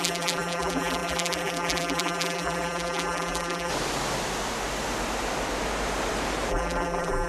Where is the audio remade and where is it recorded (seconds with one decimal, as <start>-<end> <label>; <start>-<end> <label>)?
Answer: 0.0-3.7 remade; 3.7-6.5 recorded; 6.5-7.3 remade